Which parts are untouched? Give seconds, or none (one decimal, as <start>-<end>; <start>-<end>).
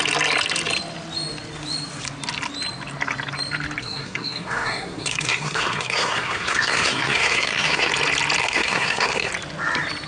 0.0-3.8; 7.9-8.4; 9.3-10.1